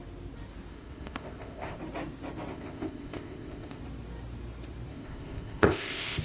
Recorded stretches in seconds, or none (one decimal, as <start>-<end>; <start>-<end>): 0.0-0.7; 1.8-2.5; 3.8-4.9